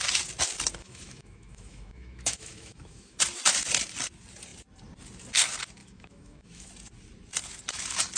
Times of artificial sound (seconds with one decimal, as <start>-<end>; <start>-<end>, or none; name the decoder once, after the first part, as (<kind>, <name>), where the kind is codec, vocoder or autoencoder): 0.8-3.2 (autoencoder, DAC-VAE); 5.8-6.7

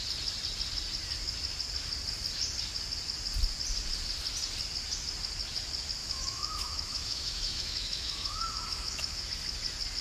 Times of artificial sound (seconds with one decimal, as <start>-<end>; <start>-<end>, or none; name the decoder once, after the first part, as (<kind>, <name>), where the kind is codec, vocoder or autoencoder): 6.0-9.2 (autoencoder, DAC-VAE)